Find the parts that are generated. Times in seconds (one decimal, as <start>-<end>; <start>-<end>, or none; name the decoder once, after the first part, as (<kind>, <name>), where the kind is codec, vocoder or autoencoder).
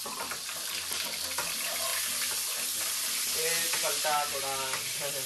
none